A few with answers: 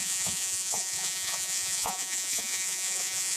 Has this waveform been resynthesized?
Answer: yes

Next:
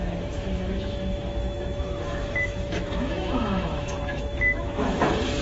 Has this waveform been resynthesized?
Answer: yes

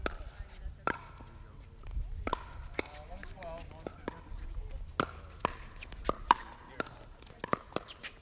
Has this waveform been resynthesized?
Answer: no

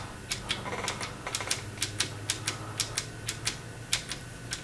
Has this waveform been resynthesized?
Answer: no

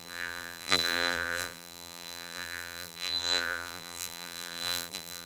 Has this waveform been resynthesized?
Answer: yes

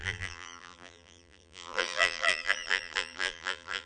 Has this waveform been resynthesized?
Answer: yes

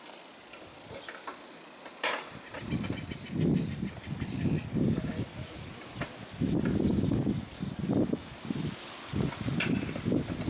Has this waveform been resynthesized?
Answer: no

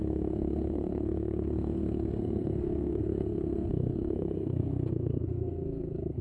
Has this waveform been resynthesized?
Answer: yes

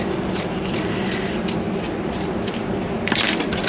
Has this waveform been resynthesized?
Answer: no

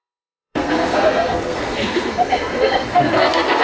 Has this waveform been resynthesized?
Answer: yes